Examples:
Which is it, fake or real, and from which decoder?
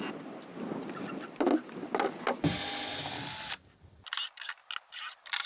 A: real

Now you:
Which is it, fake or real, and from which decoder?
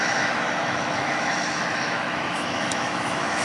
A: fake, autoencoder, DAC-VAE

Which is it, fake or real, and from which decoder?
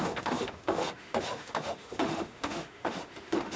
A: fake, autoencoder, DAC-VAE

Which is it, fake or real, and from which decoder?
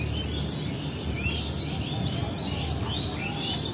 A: real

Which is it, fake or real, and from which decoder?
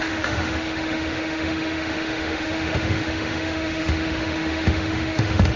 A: fake, autoencoder, DAC-VAE